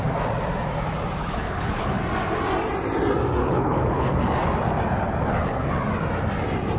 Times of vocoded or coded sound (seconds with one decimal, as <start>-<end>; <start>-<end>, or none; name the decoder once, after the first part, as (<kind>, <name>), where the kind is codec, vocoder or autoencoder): 1.2-2.0 (codec, HILCodec); 3.4-4.1